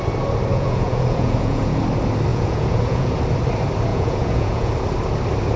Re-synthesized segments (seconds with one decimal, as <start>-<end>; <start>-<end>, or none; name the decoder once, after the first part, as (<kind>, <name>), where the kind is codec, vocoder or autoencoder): 0.5-1.8 (vocoder, Vocos); 2.3-3.1; 3.9-4.7